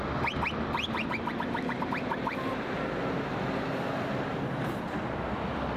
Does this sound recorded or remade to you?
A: recorded